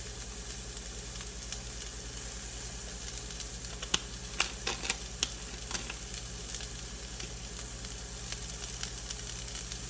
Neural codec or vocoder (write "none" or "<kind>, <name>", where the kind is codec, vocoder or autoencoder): none